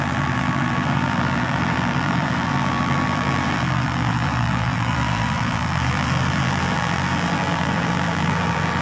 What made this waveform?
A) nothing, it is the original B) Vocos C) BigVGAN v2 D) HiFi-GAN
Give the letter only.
C